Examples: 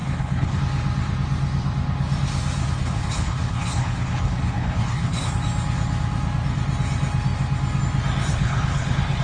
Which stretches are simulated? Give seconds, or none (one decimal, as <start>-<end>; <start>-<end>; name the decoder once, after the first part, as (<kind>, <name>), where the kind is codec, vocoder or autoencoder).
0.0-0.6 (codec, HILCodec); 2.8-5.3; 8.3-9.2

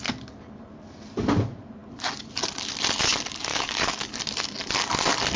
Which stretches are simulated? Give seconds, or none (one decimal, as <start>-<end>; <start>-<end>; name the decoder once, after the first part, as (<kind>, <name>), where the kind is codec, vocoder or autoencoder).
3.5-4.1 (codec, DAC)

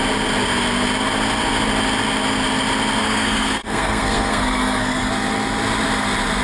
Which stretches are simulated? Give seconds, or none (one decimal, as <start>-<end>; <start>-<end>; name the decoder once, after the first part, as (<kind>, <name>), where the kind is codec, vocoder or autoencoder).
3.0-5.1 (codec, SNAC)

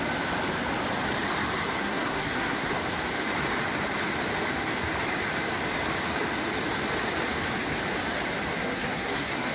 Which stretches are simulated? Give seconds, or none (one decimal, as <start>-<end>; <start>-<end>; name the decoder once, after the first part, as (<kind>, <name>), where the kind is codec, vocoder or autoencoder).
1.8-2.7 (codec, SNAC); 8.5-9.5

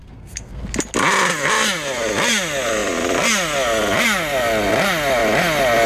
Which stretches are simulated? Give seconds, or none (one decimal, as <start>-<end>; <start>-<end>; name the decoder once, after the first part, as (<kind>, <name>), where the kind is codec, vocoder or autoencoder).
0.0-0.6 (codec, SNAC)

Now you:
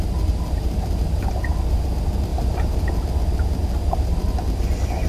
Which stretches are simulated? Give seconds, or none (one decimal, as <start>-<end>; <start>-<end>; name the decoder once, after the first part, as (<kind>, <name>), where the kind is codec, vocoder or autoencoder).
0.6-1.9 (vocoder, BigVGAN v2); 2.3-2.9